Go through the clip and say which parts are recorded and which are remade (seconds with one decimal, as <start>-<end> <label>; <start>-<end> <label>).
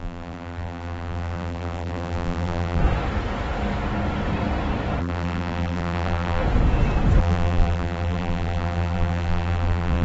0.0-2.8 remade; 2.8-5.0 recorded; 5.0-6.4 remade; 6.4-7.2 recorded; 7.2-10.0 remade